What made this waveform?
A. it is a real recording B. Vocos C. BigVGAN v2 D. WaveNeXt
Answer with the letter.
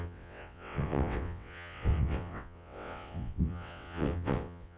D